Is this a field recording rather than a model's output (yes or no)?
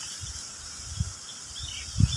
yes